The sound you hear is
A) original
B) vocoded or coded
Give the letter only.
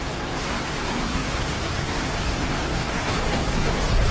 B